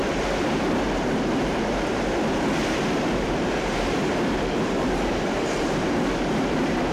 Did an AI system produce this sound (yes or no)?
yes